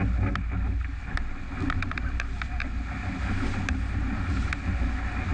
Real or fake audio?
real